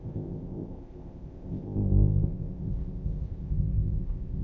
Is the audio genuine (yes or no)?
no